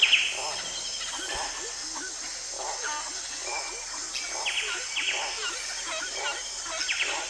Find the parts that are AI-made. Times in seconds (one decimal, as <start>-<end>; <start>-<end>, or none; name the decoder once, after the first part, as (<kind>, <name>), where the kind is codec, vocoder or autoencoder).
none